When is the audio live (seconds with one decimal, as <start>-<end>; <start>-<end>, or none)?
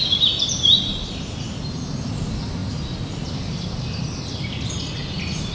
0.0-5.5